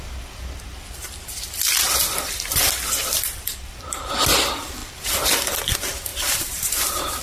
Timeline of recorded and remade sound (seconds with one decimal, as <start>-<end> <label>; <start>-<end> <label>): 0.0-7.2 recorded